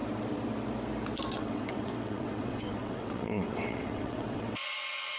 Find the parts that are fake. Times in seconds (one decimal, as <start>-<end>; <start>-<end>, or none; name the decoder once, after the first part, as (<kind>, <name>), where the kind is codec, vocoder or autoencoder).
1.3-5.2 (vocoder, WaveNeXt)